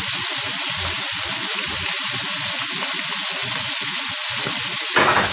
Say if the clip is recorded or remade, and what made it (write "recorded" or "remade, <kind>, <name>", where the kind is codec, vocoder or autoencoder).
recorded